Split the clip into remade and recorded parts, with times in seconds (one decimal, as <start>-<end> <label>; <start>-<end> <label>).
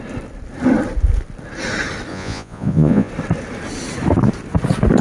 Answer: 0.0-2.1 recorded; 2.1-3.1 remade; 3.1-5.0 recorded